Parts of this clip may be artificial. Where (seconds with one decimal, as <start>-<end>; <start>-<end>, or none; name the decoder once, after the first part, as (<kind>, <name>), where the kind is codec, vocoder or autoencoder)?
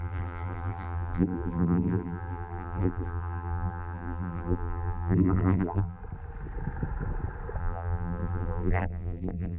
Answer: 0.0-6.0 (vocoder, BigVGAN v2); 7.6-9.6